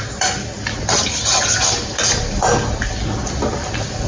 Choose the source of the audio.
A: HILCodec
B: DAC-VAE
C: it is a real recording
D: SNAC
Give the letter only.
C